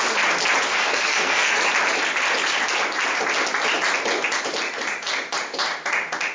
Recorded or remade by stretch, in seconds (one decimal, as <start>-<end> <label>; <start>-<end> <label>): 0.0-0.7 recorded; 0.7-1.6 remade; 1.6-6.3 recorded